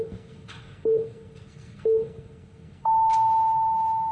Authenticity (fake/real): fake